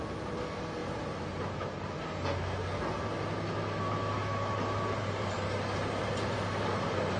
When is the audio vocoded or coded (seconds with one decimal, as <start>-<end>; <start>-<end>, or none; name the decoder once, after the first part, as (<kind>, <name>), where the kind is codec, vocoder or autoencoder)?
0.8-2.8 (vocoder, BigVGAN v2); 5.0-7.2